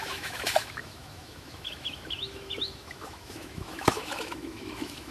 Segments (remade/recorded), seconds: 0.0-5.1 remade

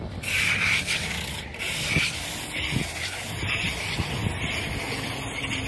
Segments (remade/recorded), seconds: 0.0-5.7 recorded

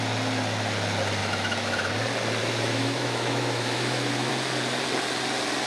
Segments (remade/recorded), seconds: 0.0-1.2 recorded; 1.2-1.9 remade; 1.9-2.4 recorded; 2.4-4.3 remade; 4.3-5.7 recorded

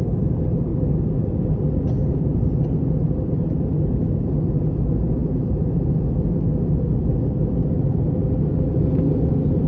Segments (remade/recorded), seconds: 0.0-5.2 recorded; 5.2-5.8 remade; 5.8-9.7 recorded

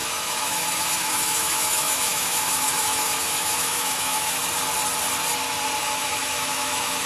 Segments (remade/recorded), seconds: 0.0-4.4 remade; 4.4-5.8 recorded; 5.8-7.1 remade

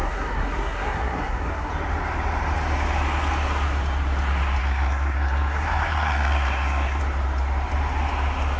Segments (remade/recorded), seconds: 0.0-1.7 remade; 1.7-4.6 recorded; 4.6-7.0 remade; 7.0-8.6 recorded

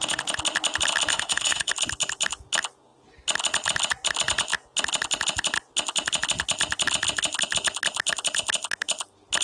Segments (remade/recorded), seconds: 0.0-1.1 recorded; 1.1-1.7 remade; 1.7-9.4 recorded

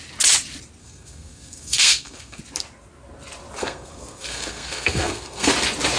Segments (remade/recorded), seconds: 0.0-0.8 recorded; 0.8-2.4 remade; 2.4-3.6 recorded; 3.6-5.5 remade; 5.5-6.0 recorded